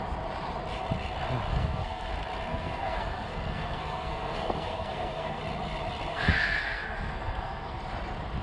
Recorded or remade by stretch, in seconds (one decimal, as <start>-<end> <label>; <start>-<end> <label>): 0.0-1.5 recorded; 1.5-2.1 remade; 2.1-2.5 recorded; 2.5-5.4 remade; 5.4-6.1 recorded; 6.1-7.8 remade; 7.8-8.4 recorded